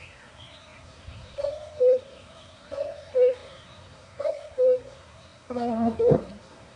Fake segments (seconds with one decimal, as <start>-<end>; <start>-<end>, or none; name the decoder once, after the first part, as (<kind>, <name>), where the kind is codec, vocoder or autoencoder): 0.0-6.8 (codec, SNAC)